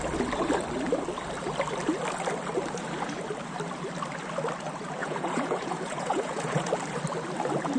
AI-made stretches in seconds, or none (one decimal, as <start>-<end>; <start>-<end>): 5.0-6.7